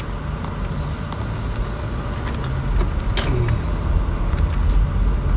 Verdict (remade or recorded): recorded